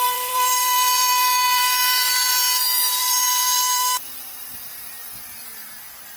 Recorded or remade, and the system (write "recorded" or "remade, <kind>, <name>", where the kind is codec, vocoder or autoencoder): remade, vocoder, BigVGAN v2